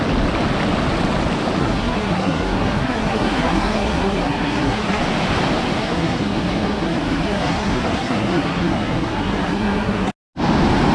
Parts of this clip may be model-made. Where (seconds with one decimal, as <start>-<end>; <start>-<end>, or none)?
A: 1.6-5.0; 5.8-10.1